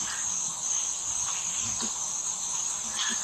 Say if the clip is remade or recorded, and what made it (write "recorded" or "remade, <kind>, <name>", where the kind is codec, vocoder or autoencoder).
recorded